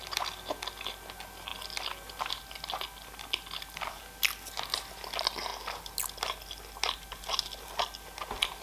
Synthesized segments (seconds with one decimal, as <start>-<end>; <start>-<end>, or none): none